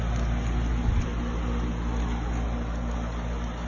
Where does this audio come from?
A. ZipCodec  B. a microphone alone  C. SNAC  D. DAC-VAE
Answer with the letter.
B